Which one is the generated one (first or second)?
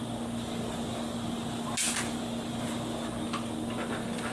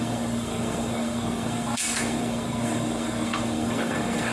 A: second